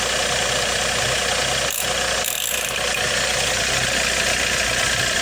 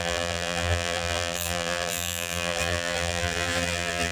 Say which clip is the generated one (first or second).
second